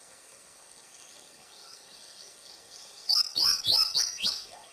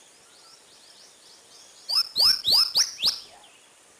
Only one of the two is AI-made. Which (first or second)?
first